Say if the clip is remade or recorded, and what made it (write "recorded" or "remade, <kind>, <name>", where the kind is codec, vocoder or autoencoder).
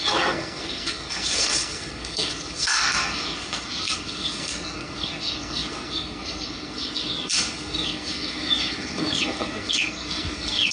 remade, codec, SNAC